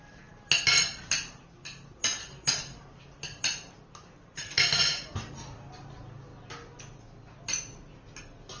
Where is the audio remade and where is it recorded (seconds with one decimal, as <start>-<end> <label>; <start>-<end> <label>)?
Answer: 0.0-8.6 recorded